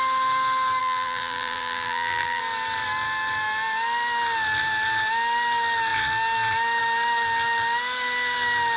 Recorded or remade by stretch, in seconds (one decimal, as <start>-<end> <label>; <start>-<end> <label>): 0.0-0.8 recorded; 0.8-2.4 remade; 2.4-8.8 recorded